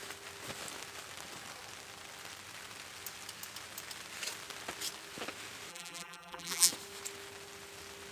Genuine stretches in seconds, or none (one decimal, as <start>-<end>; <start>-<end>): 0.0-5.7; 6.7-8.1